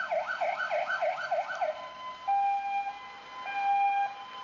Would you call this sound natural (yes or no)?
yes